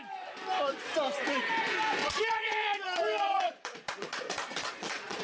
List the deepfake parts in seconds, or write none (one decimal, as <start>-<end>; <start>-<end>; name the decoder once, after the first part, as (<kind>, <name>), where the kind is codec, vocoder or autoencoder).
2.0-5.2 (vocoder, Vocos)